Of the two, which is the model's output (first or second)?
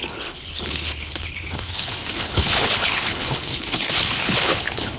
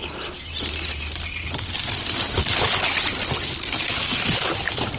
first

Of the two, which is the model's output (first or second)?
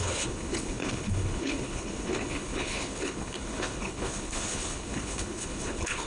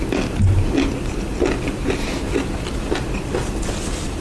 first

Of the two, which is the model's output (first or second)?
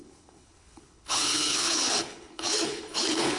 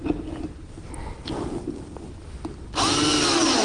first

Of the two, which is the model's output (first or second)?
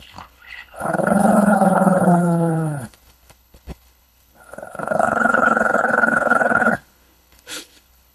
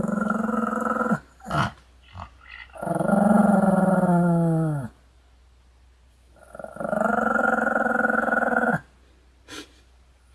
first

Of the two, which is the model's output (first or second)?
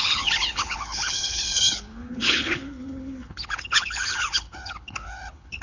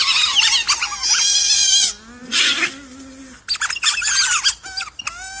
first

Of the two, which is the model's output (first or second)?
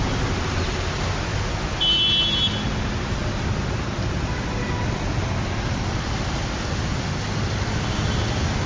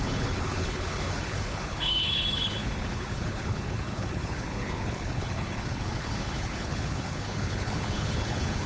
second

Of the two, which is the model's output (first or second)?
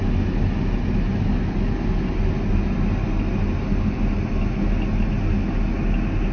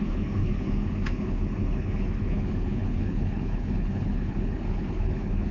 second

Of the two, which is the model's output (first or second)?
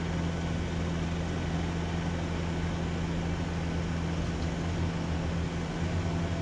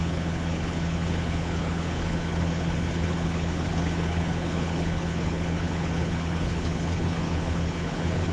second